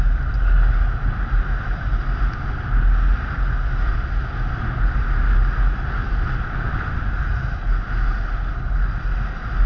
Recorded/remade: recorded